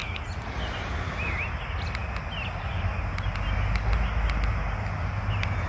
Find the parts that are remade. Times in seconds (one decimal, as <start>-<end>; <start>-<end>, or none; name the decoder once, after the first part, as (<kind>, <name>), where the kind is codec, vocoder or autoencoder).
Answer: none